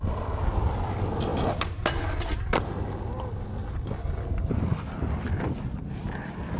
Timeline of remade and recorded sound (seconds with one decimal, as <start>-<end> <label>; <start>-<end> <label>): 0.0-6.6 recorded